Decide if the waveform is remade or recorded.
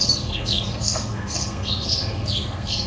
remade